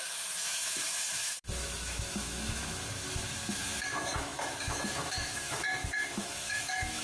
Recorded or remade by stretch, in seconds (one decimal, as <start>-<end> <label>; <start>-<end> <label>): 0.0-7.0 remade